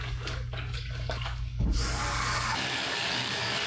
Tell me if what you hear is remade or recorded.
remade